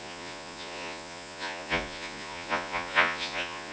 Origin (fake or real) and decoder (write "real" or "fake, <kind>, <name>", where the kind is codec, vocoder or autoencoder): fake, vocoder, Vocos